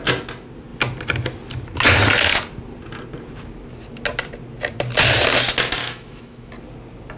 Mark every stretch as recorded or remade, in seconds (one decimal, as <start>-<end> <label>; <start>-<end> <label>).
0.0-5.8 recorded; 5.8-6.5 remade; 6.5-7.2 recorded